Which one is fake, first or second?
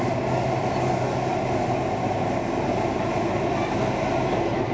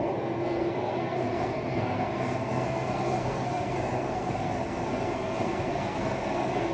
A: second